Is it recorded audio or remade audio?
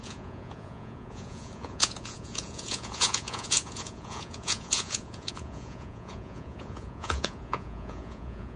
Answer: remade